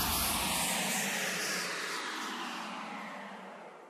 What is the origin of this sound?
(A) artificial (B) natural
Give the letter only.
B